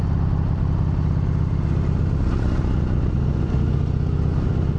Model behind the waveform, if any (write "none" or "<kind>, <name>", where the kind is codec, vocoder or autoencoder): none